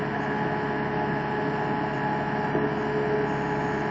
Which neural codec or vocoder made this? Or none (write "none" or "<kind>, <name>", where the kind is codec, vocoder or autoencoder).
none